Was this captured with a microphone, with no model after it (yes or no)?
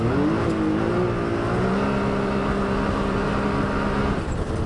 yes